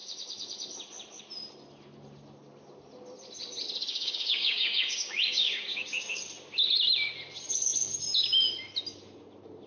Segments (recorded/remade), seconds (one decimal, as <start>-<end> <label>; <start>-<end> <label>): 0.0-3.9 recorded; 3.9-6.3 remade; 6.3-9.7 recorded